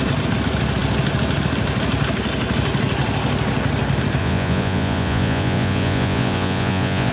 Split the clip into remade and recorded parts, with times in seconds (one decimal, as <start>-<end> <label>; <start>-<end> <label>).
0.0-4.2 recorded; 4.2-7.1 remade